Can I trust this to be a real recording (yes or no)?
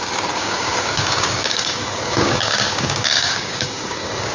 no